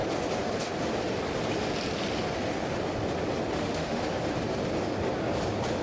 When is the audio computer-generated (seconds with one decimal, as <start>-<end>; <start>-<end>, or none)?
3.5-4.1